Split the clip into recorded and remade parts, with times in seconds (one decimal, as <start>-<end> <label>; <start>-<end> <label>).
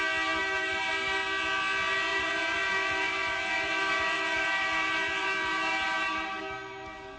0.0-0.4 recorded; 0.4-0.9 remade; 0.9-2.1 recorded; 2.1-6.4 remade; 6.4-7.2 recorded